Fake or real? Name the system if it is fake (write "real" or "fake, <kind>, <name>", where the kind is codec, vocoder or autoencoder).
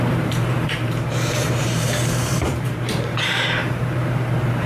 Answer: fake, vocoder, BigVGAN v2